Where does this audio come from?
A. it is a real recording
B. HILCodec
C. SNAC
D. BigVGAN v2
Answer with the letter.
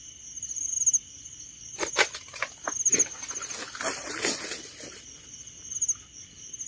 A